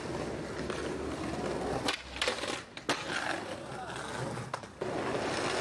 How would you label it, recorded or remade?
recorded